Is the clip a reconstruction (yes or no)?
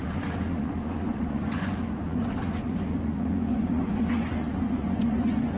yes